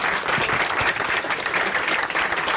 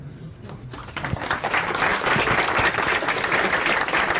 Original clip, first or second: second